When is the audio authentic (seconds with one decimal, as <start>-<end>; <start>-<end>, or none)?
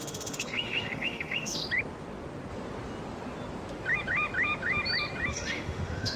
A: 1.6-5.3